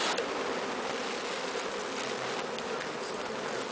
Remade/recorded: recorded